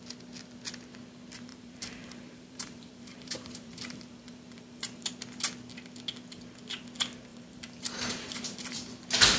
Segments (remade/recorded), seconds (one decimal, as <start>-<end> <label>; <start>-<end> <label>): 0.0-1.5 recorded; 1.5-5.1 remade; 5.1-7.3 recorded; 7.3-8.9 remade; 8.9-9.4 recorded